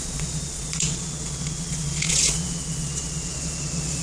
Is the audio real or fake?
fake